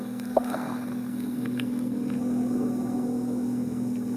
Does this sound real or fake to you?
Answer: fake